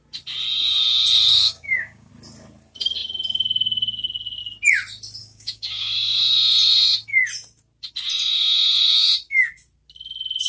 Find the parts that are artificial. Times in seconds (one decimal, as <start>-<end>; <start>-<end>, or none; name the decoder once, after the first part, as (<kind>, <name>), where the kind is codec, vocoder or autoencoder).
1.3-2.1 (codec, DAC); 5.2-6.2